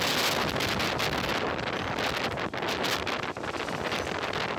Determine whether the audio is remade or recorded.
recorded